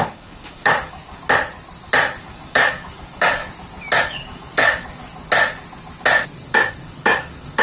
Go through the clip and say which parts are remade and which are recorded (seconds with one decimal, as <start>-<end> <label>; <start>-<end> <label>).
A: 0.0-1.0 remade; 1.0-2.2 recorded; 2.2-3.4 remade; 3.4-4.0 recorded; 4.0-5.1 remade; 5.1-6.7 recorded; 6.7-7.6 remade